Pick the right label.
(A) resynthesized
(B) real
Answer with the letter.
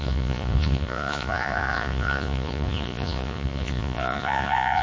A